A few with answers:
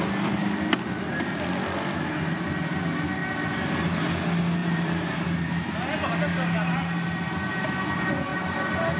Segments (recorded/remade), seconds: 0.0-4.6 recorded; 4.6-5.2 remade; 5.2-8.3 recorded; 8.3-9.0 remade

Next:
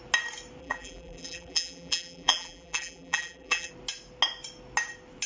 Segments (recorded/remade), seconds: 0.0-0.6 recorded; 0.6-3.7 remade; 3.7-5.3 recorded